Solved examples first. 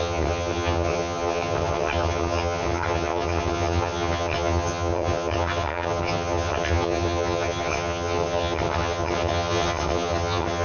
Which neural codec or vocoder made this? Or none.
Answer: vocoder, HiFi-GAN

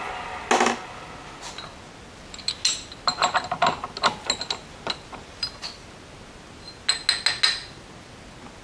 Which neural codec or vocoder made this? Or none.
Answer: none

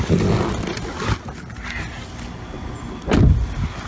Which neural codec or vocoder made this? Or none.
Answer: none